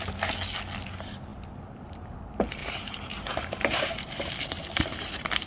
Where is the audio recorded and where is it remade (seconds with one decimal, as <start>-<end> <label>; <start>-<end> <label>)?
0.0-1.3 recorded; 1.3-2.2 remade; 2.2-2.6 recorded; 2.6-4.3 remade; 4.3-5.5 recorded